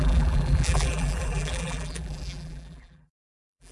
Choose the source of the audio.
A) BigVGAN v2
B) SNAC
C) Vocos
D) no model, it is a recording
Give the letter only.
A